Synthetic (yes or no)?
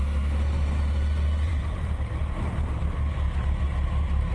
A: no